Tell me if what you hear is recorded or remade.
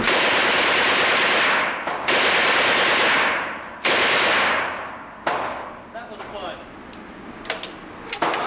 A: recorded